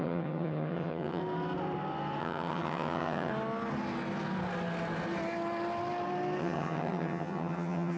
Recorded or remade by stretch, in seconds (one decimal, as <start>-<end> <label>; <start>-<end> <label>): 0.0-1.2 remade; 1.2-2.2 recorded; 2.2-3.3 remade; 3.3-6.4 recorded; 6.4-8.0 remade